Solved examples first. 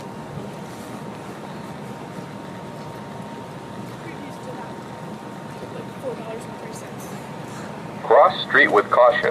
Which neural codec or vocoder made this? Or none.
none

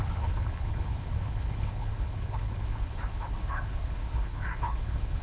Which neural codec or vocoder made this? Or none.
codec, HILCodec